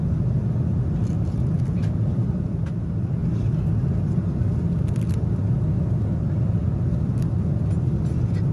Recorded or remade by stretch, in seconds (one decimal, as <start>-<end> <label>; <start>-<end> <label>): 0.0-8.5 recorded